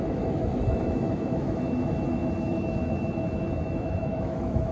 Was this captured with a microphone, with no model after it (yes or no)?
no